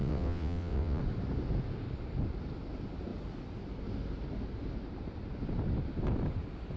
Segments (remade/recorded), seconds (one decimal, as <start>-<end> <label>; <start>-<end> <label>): 0.0-1.0 remade; 1.0-6.8 recorded